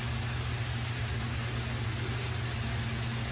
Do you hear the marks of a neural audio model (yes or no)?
no